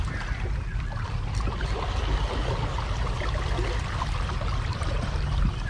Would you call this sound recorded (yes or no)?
yes